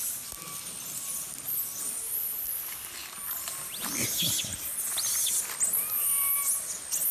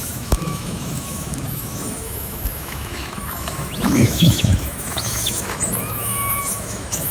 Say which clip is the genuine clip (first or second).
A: first